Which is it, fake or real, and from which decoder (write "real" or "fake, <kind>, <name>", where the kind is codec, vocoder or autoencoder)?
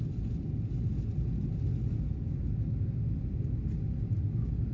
real